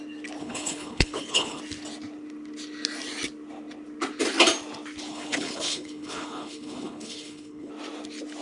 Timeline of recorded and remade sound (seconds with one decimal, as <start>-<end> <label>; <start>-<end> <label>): 0.0-0.4 recorded; 0.4-1.6 remade; 1.6-5.1 recorded; 5.1-7.7 remade; 7.7-8.4 recorded